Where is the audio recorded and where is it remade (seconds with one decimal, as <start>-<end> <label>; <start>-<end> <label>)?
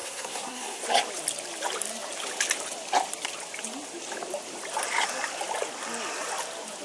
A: 0.0-0.8 remade; 0.8-6.8 recorded